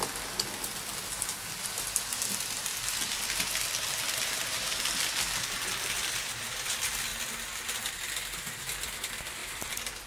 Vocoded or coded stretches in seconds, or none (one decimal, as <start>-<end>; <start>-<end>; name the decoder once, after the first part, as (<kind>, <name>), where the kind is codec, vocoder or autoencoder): 2.7-6.1 (vocoder, BigVGAN v2); 9.4-10.1